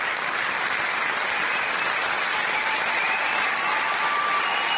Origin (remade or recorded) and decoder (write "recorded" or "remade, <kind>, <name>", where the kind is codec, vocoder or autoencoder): recorded